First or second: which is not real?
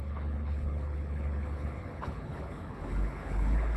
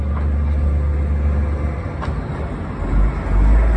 first